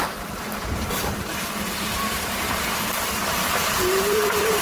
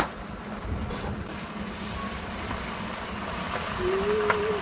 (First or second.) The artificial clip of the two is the first